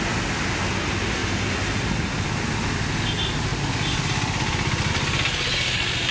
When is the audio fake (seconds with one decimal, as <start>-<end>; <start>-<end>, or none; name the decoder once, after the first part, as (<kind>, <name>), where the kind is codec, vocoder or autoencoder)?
none

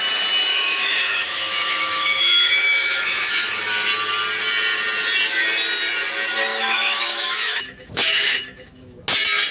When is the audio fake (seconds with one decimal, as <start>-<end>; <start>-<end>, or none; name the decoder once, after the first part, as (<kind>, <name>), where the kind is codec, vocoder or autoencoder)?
0.5-3.6 (autoencoder, DAC-VAE); 6.5-9.0

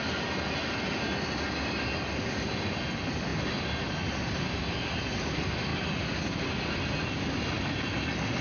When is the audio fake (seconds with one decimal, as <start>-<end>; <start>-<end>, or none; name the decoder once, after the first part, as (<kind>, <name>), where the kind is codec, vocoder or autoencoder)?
none

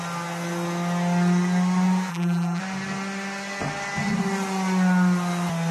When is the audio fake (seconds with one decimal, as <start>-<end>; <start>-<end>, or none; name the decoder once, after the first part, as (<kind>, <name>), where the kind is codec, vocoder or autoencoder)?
2.1-2.6 (vocoder, BigVGAN v2)

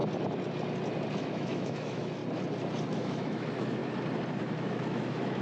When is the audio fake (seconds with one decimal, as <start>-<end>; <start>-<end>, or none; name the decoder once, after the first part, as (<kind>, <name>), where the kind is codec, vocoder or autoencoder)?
1.2-2.2 (autoencoder, DAC-VAE); 2.9-3.8; 4.4-5.4

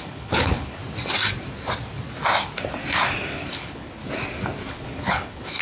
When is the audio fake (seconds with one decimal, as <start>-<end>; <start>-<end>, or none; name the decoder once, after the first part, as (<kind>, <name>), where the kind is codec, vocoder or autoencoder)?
0.0-0.8 (codec, HILCodec); 3.5-4.0; 4.7-5.6